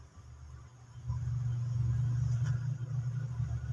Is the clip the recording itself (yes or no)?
yes